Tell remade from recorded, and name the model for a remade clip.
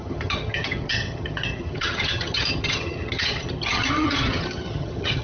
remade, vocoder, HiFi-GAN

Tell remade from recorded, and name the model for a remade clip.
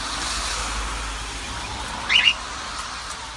recorded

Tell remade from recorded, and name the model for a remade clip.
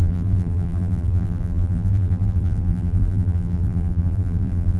remade, vocoder, BigVGAN v2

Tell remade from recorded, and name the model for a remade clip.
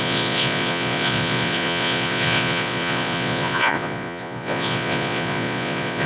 remade, vocoder, Vocos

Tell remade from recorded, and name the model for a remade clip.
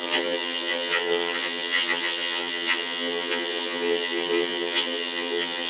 remade, vocoder, HiFi-GAN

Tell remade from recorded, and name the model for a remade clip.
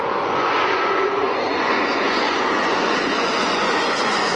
remade, vocoder, Vocos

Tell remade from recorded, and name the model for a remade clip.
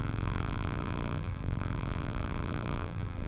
remade, vocoder, BigVGAN v2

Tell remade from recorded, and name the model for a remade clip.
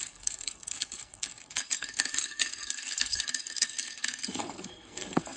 remade, codec, SNAC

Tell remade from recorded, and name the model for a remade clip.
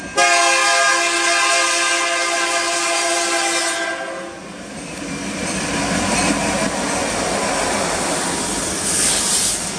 recorded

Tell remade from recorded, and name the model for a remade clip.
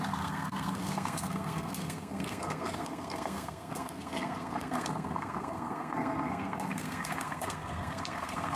remade, codec, SNAC